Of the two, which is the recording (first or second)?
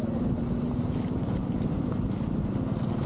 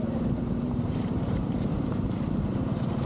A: first